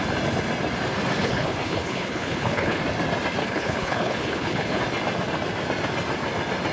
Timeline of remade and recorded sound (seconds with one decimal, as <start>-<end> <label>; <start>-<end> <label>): 0.0-1.2 recorded; 1.2-2.8 remade; 2.8-3.4 recorded; 3.4-4.8 remade; 4.8-6.7 recorded